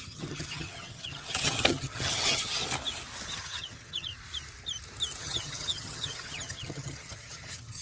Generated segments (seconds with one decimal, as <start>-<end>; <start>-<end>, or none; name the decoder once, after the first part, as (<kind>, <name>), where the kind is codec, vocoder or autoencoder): 0.0-2.6 (vocoder, HiFi-GAN); 3.3-4.1; 5.2-7.8